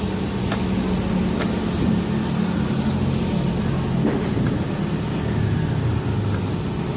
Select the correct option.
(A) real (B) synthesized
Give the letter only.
A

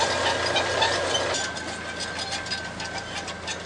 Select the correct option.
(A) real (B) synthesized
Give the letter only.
A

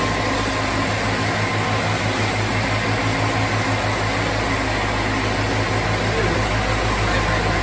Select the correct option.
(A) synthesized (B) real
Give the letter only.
B